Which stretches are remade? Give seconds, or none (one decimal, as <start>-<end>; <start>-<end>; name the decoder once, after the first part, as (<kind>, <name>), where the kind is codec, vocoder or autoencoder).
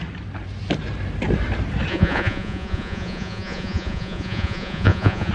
1.9-5.3 (vocoder, Vocos)